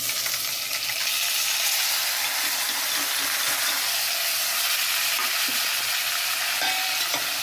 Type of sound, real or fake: real